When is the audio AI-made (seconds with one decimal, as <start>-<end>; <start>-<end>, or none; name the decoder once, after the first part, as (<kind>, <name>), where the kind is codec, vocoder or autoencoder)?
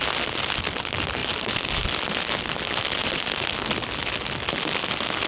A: none